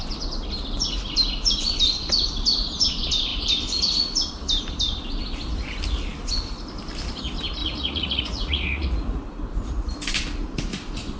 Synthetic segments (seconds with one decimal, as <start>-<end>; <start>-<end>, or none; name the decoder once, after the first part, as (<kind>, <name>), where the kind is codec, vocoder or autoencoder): 7.6-9.2 (vocoder, Vocos)